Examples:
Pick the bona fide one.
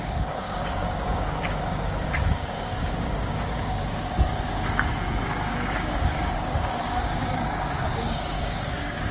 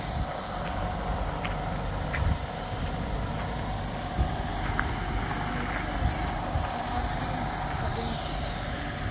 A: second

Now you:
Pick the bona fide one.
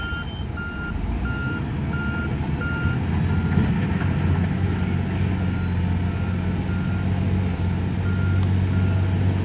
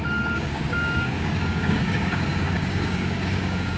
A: first